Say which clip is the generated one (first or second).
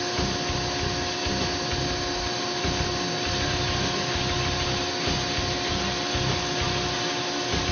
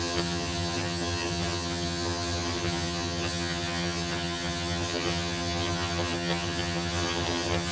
second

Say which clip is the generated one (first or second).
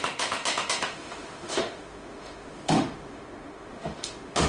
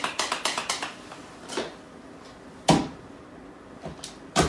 first